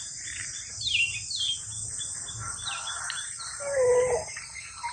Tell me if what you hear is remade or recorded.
recorded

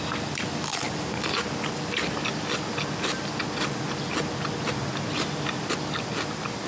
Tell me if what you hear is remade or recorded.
recorded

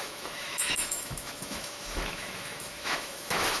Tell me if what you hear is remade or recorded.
remade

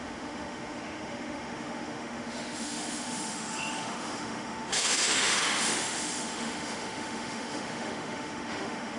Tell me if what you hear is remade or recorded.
remade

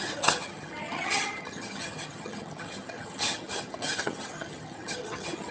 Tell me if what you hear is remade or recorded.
remade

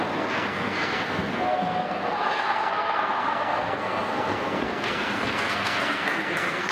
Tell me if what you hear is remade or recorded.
remade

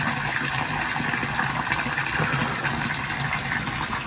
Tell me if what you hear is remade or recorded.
recorded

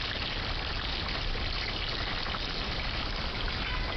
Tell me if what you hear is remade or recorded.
recorded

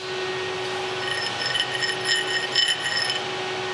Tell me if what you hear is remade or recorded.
recorded